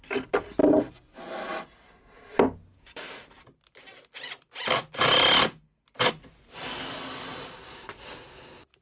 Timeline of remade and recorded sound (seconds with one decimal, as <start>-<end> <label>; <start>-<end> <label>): 0.0-8.8 recorded